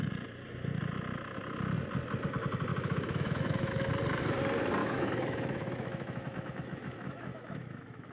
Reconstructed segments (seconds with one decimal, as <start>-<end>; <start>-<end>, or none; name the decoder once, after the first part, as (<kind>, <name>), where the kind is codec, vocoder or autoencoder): 2.7-3.9 (autoencoder, DAC-VAE); 4.8-8.1